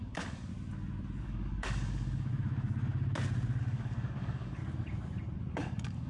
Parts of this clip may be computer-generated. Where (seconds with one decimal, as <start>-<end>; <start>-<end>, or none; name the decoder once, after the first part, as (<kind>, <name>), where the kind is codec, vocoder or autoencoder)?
0.0-0.5 (codec, DAC); 1.2-2.3; 3.6-4.6; 5.5-6.1